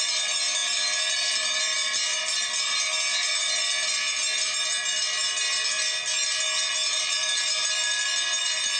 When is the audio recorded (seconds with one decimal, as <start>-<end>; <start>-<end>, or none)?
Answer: 0.0-8.8